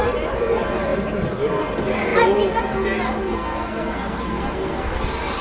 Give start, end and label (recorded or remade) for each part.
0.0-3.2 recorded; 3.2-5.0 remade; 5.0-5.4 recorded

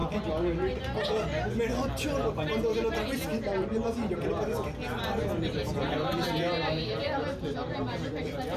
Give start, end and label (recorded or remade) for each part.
0.0-8.6 recorded

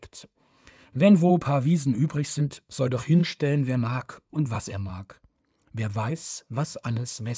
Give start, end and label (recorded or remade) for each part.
0.0-1.3 remade; 1.3-2.4 recorded; 2.4-4.9 remade; 4.9-6.1 recorded; 6.1-7.4 remade

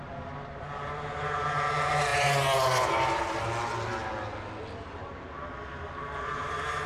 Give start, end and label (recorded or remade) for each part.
0.0-6.9 recorded

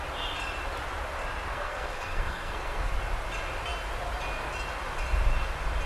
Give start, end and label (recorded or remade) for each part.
0.0-1.5 recorded; 1.5-2.9 remade; 2.9-5.9 recorded

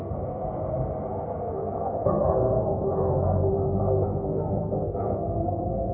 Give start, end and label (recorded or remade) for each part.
0.0-0.4 remade; 0.4-1.1 recorded; 1.1-5.9 remade

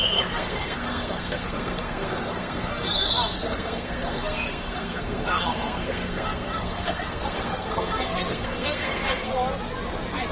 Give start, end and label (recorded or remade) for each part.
0.0-9.3 remade; 9.3-10.3 recorded